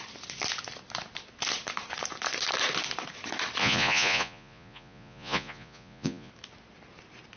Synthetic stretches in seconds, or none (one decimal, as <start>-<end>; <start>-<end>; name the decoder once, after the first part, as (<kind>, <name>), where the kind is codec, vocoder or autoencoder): 3.6-6.3 (vocoder, Vocos)